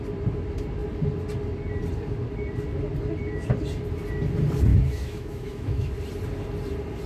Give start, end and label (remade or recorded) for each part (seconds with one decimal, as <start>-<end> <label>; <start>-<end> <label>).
0.0-4.7 recorded; 4.7-5.9 remade; 5.9-7.1 recorded